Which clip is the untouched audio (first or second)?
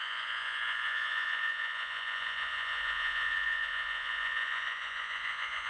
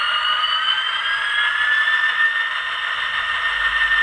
second